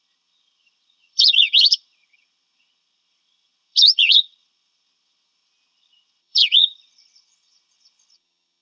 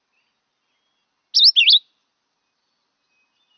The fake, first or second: first